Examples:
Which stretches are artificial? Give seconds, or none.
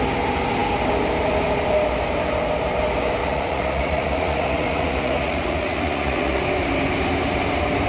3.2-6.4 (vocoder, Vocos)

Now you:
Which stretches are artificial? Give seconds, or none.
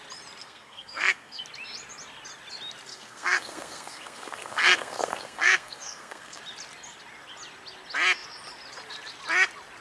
0.4-1.4 (codec, SNAC); 2.9-6.4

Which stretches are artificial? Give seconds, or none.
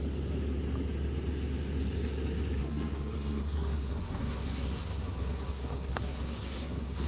2.6-7.1 (codec, SNAC)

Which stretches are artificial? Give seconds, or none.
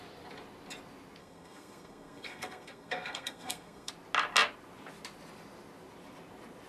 1.2-3.9 (codec, SNAC)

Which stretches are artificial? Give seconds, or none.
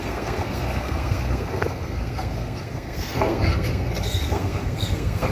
0.0-5.3 (codec, SNAC)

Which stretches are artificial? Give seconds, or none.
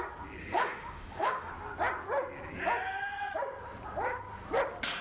0.4-1.5 (autoencoder, DAC-VAE)